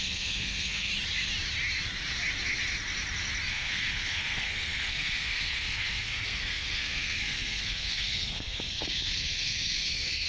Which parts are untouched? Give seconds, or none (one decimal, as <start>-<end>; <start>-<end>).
0.9-3.5